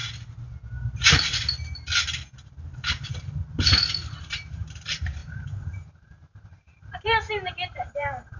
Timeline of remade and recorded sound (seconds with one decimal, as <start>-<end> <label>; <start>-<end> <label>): 0.0-4.2 recorded; 4.2-8.4 remade